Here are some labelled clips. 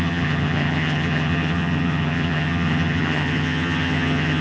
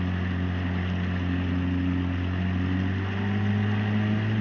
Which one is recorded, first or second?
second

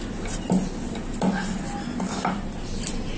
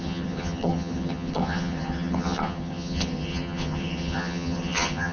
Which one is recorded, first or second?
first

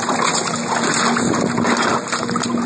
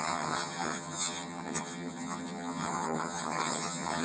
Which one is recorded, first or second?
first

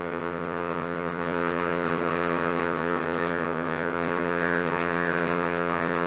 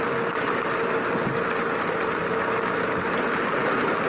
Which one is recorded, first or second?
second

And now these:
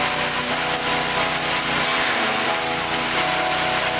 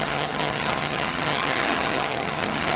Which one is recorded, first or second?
first